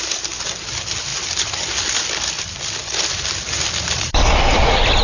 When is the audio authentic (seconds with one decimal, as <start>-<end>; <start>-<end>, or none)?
0.0-5.0